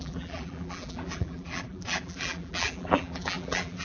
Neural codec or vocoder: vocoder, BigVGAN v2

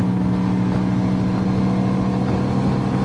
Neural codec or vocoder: none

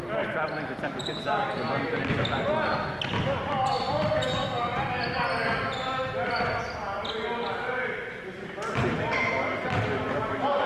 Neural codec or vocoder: none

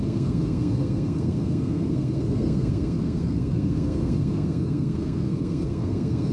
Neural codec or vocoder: codec, SNAC